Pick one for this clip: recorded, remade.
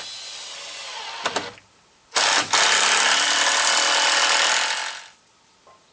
recorded